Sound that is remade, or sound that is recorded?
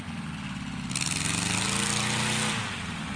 recorded